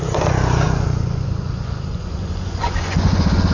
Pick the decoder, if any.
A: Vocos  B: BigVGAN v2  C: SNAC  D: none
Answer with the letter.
A